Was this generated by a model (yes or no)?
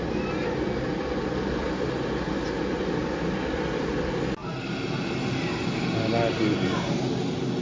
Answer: no